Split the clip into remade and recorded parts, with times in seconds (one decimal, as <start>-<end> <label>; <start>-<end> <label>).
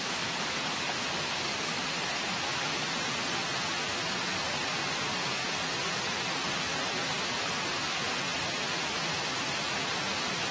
0.0-2.3 recorded; 2.3-3.1 remade; 3.1-10.5 recorded